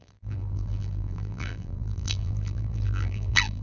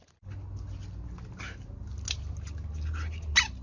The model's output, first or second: first